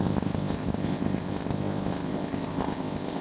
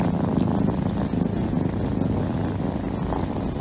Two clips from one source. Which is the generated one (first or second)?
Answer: first